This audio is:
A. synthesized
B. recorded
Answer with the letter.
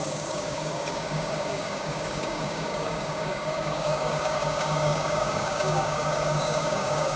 A